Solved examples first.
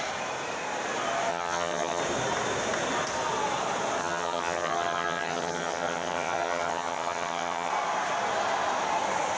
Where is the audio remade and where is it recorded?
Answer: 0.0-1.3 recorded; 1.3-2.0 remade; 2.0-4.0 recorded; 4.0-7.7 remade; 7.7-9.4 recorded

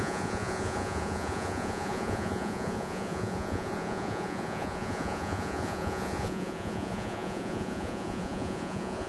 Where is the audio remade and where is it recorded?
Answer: 0.0-9.1 remade